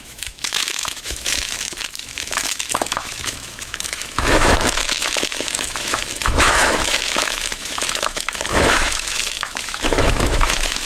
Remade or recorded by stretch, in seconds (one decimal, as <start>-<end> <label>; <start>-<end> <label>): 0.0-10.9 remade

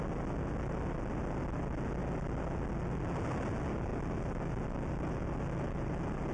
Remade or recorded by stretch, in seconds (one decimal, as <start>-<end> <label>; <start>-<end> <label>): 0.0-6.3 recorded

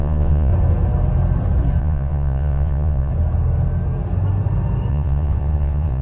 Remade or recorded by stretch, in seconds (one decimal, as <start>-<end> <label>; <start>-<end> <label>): 0.0-0.5 remade; 0.5-1.8 recorded; 1.8-3.1 remade; 3.1-4.9 recorded; 4.9-6.0 remade

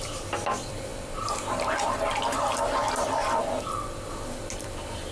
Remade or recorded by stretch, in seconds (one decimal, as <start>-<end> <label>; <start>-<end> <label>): 0.0-5.1 recorded

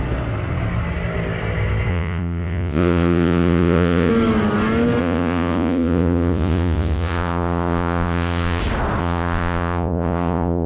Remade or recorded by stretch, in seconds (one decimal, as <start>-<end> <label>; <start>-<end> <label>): 0.0-1.9 recorded; 1.9-4.1 remade; 4.1-5.0 recorded; 5.0-8.6 remade; 8.6-9.0 recorded; 9.0-10.7 remade